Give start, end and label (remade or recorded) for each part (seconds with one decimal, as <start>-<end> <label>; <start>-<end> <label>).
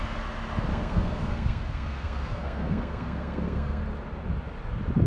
0.0-0.7 recorded; 0.7-3.8 remade; 3.8-5.1 recorded